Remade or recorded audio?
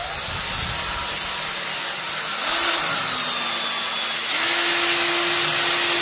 recorded